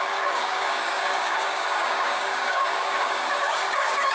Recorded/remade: remade